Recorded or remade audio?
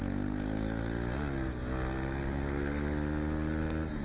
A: recorded